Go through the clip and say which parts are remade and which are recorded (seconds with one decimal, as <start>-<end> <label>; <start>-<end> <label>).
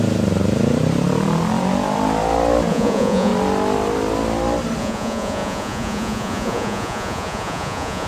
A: 0.0-2.7 recorded; 2.7-3.3 remade; 3.3-4.8 recorded; 4.8-8.1 remade